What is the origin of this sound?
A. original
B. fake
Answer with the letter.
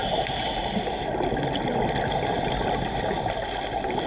A